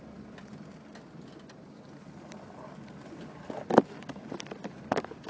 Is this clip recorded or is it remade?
recorded